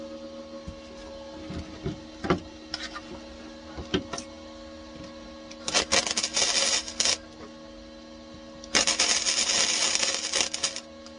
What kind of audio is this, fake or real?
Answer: real